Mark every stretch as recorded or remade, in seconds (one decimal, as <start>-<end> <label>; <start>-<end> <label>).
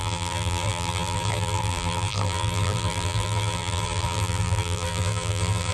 0.0-5.7 remade